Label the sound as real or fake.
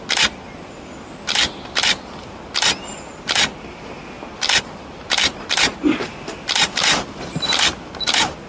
real